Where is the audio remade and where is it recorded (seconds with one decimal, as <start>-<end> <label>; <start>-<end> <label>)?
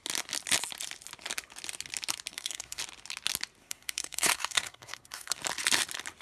0.0-2.3 recorded; 2.3-2.8 remade; 2.8-3.6 recorded; 3.6-5.4 remade; 5.4-6.2 recorded